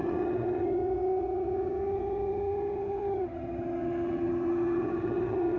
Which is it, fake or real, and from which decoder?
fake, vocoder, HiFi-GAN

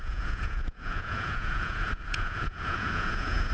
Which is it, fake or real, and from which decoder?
fake, vocoder, Vocos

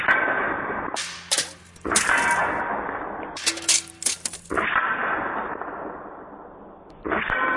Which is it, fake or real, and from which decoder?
real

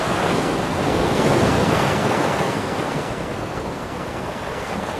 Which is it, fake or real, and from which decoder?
fake, codec, SNAC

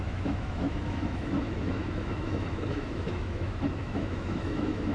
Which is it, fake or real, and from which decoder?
fake, autoencoder, DAC-VAE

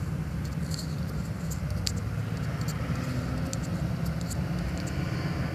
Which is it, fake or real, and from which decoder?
real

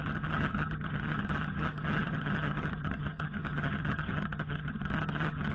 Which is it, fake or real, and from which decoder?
fake, vocoder, HiFi-GAN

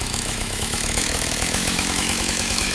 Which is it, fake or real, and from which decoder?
fake, autoencoder, DAC-VAE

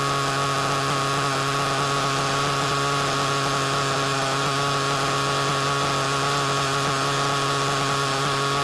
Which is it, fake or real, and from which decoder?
real